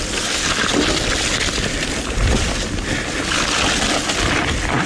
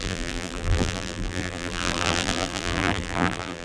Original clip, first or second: first